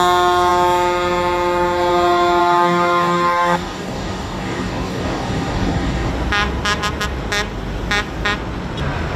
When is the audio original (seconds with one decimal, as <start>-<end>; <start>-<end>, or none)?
0.0-2.4; 6.1-9.2